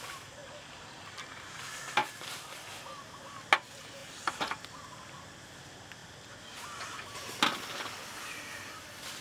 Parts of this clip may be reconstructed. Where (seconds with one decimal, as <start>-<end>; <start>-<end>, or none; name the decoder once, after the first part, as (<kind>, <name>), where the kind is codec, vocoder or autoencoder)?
0.4-1.6 (vocoder, BigVGAN v2); 2.0-2.7